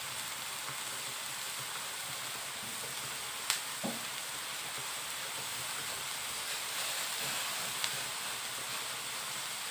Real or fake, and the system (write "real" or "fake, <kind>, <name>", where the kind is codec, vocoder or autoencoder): real